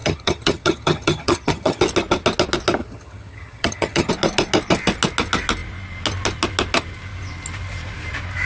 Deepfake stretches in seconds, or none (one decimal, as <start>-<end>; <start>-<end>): 0.0-1.8; 2.8-4.1